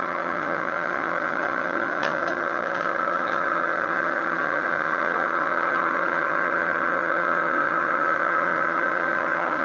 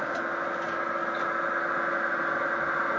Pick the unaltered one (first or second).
second